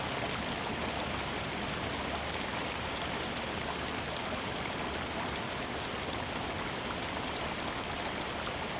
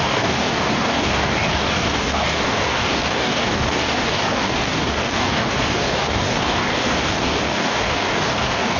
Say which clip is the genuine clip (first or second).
first